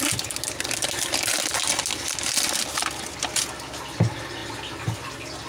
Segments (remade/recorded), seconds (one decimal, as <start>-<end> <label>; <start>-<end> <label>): 0.0-5.5 recorded